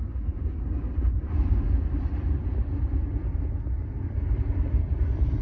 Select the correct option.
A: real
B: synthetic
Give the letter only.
A